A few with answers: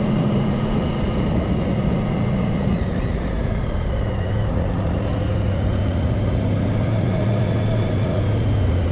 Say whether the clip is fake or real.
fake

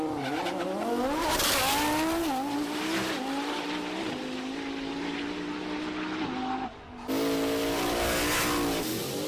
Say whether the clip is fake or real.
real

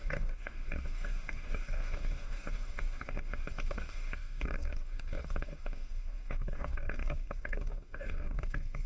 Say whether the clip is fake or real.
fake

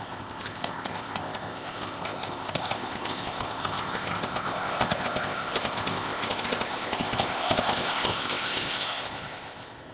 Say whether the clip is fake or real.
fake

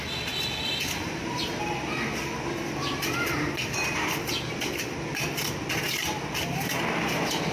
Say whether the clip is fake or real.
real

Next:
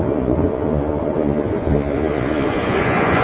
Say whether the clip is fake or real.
fake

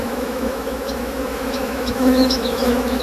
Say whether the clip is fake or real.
fake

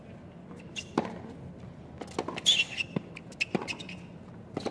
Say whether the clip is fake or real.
real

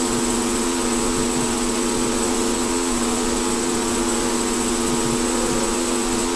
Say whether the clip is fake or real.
fake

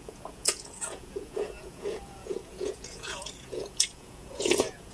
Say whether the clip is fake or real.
fake